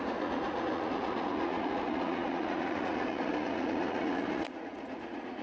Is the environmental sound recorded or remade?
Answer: remade